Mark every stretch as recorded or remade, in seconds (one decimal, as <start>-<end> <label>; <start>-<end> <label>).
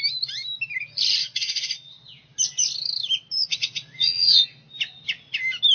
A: 0.0-1.2 recorded; 1.2-2.0 remade; 2.0-3.5 recorded; 3.5-4.4 remade; 4.4-5.7 recorded